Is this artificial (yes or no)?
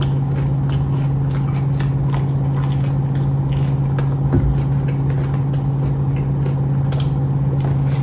no